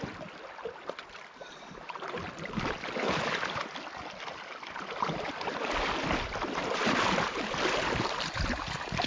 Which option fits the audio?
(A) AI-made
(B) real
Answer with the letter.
B